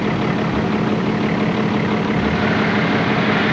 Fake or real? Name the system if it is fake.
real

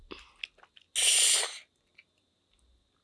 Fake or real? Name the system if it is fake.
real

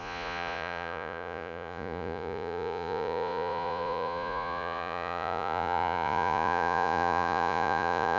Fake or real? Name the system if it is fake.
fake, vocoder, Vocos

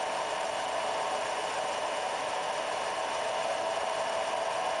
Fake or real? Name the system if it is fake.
real